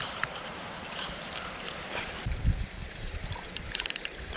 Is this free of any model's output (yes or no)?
no